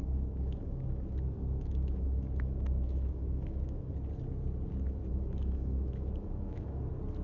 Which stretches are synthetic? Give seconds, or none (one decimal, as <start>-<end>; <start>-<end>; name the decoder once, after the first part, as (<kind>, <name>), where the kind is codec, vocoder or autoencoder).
0.0-3.9 (autoencoder, DAC-VAE); 5.1-6.8